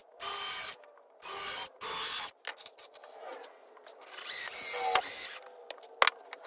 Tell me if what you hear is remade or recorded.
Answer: recorded